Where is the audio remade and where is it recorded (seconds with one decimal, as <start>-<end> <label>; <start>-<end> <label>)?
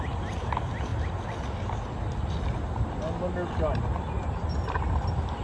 0.0-5.4 recorded